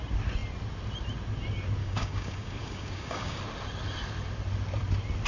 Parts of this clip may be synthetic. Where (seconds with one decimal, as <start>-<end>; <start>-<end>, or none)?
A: 1.8-3.4